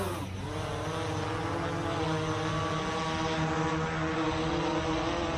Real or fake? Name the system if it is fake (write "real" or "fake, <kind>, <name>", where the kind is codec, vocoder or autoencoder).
real